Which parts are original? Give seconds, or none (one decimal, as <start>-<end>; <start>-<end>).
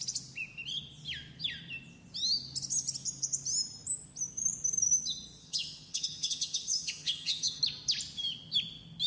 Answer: 0.0-5.4; 7.6-9.1